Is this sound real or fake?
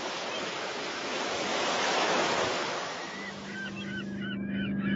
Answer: fake